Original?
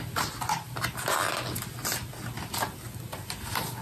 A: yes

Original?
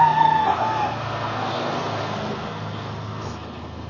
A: no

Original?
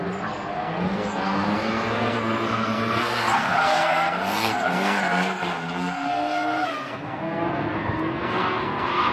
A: no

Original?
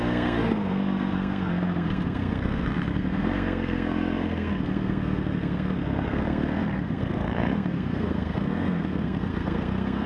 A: no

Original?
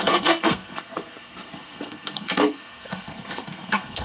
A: no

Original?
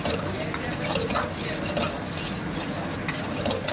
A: yes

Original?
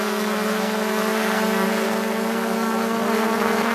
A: no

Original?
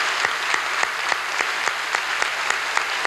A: yes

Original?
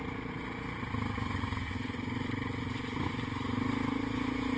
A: yes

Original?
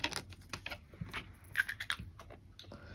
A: yes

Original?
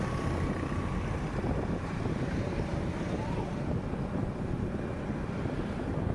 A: yes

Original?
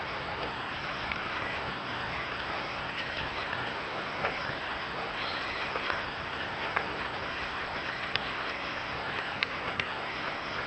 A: no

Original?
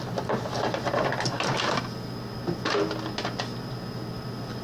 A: yes